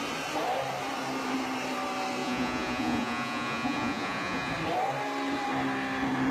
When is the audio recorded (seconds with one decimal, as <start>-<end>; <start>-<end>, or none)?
0.0-2.2; 4.5-6.3